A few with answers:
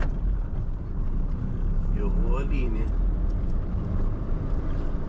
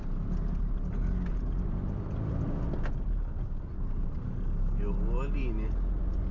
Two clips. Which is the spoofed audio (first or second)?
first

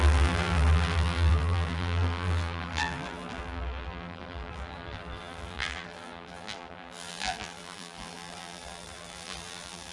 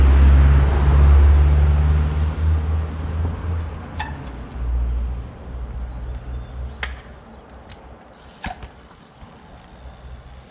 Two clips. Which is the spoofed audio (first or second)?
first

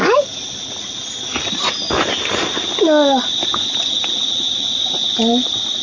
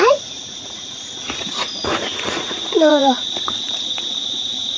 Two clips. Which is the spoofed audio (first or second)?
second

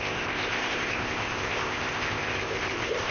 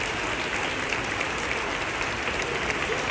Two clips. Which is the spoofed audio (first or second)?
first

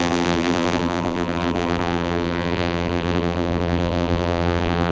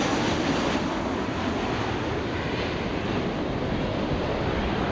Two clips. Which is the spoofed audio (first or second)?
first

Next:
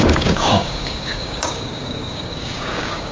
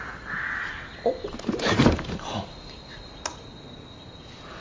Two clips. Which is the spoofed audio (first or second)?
first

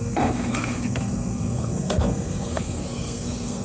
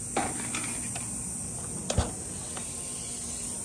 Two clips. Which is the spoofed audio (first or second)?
first